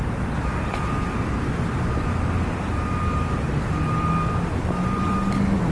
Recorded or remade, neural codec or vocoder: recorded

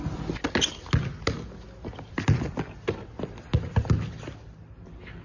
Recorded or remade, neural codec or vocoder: recorded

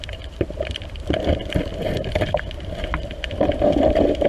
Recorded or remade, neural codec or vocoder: remade, vocoder, BigVGAN v2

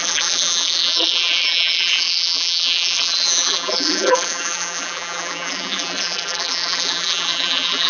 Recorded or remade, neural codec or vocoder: remade, vocoder, BigVGAN v2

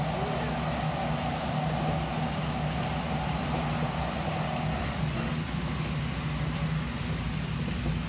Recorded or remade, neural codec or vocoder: recorded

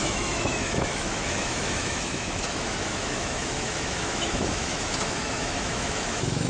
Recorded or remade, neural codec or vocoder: remade, autoencoder, DAC-VAE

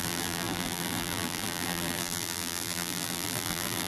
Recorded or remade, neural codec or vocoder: remade, vocoder, BigVGAN v2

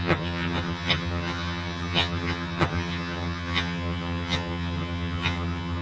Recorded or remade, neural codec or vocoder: remade, vocoder, HiFi-GAN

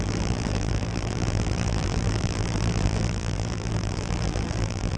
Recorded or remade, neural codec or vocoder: remade, vocoder, BigVGAN v2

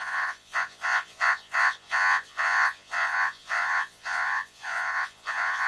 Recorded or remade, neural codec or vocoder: remade, vocoder, Vocos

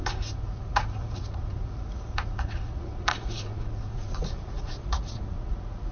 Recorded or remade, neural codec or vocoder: remade, vocoder, Vocos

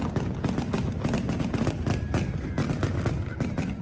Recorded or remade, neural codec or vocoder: recorded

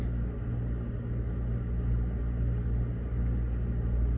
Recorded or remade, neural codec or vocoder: recorded